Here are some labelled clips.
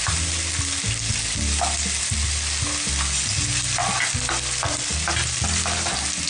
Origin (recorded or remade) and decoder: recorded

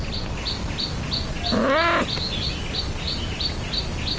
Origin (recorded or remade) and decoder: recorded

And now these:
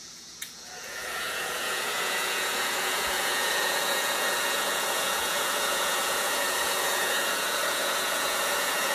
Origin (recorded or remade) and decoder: remade, vocoder, Vocos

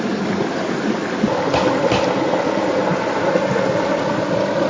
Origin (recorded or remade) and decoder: recorded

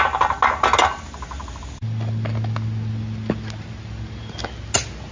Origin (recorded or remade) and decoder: recorded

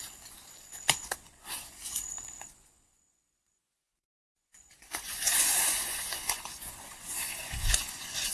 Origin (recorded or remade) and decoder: remade, vocoder, Vocos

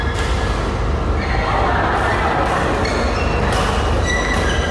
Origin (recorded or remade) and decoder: recorded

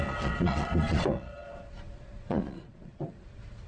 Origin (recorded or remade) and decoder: remade, vocoder, Vocos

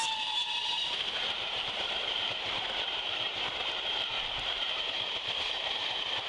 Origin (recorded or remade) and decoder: remade, vocoder, BigVGAN v2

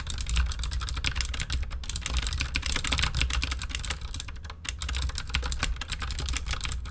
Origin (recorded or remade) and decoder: recorded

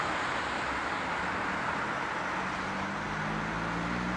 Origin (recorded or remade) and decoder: recorded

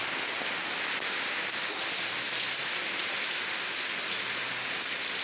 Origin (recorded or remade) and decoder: recorded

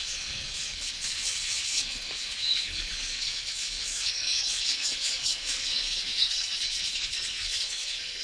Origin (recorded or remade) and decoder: remade, codec, SNAC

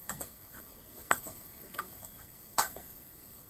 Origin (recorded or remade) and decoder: remade, codec, SNAC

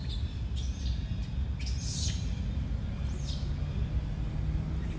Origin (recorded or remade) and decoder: recorded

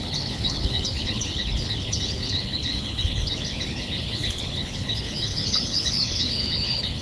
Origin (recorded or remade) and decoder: remade, codec, HILCodec